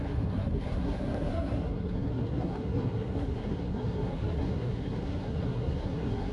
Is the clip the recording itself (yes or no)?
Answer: no